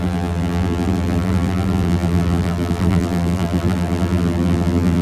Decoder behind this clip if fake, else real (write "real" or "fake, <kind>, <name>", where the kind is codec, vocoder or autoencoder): fake, vocoder, BigVGAN v2